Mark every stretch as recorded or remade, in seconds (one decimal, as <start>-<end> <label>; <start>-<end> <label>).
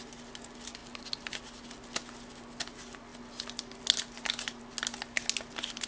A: 0.0-5.9 recorded